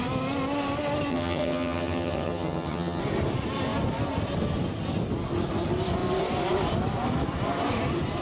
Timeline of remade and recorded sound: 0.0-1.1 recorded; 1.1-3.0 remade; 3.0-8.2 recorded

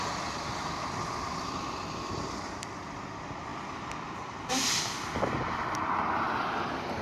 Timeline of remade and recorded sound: 0.0-7.0 recorded